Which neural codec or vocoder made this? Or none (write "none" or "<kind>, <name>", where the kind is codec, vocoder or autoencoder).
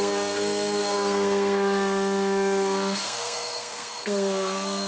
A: codec, SNAC